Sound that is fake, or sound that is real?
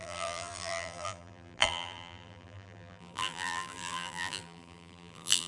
fake